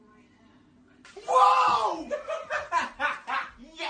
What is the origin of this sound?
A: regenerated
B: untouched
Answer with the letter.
B